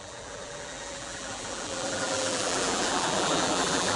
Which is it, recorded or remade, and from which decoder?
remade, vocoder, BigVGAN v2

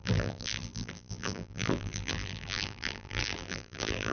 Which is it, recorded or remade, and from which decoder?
remade, vocoder, BigVGAN v2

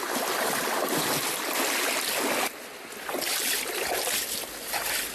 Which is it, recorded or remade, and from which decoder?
recorded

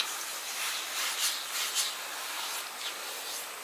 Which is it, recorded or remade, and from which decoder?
recorded